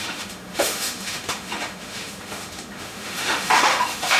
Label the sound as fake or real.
fake